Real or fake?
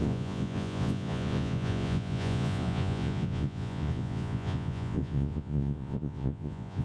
fake